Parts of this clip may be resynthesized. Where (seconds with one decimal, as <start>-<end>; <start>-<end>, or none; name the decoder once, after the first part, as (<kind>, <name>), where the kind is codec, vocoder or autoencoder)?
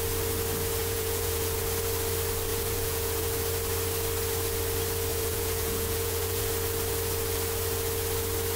0.8-1.6 (vocoder, Vocos); 2.5-3.3; 5.1-6.5